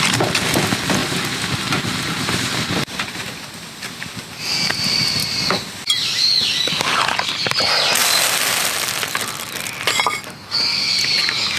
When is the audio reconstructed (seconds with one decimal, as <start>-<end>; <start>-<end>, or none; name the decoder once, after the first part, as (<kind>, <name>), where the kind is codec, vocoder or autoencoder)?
1.0-4.0 (vocoder, BigVGAN v2)